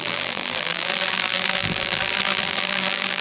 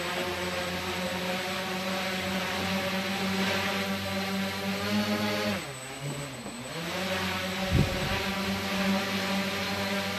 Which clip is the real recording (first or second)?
second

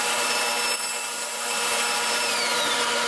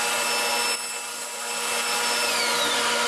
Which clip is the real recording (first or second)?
second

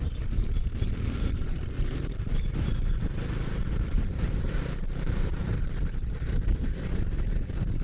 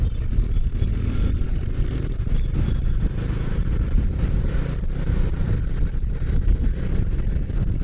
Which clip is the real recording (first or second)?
second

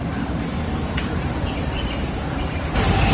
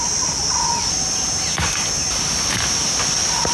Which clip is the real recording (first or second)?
second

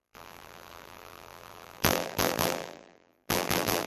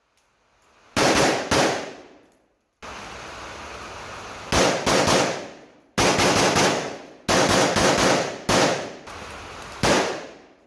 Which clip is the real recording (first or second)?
second